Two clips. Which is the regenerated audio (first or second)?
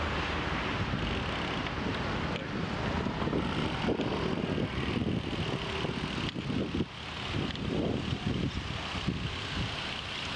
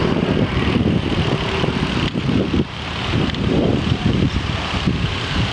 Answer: second